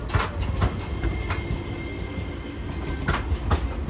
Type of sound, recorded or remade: recorded